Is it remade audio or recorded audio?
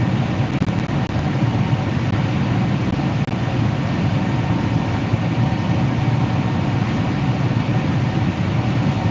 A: recorded